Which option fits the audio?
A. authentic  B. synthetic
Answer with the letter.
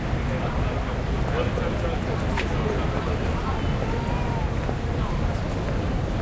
A